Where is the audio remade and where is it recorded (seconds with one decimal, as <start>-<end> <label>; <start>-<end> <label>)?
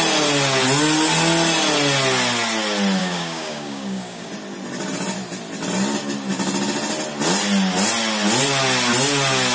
0.0-3.0 recorded; 3.0-4.3 remade; 4.3-9.5 recorded